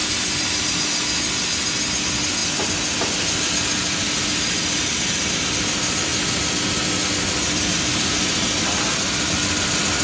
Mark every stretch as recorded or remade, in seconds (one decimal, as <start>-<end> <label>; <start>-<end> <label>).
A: 0.0-10.0 recorded